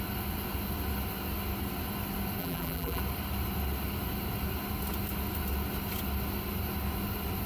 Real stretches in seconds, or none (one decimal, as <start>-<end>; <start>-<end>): 0.0-2.4; 3.0-7.5